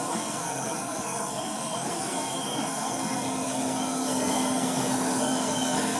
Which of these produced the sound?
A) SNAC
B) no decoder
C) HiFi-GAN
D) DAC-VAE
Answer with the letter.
A